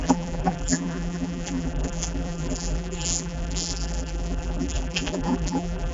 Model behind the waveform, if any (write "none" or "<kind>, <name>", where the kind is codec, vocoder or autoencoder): vocoder, BigVGAN v2